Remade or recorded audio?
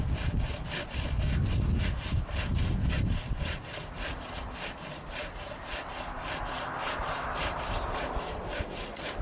recorded